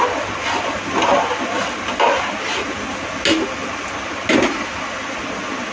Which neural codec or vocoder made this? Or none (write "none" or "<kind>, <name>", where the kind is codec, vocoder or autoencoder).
none